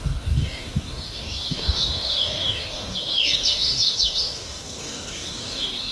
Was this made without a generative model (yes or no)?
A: no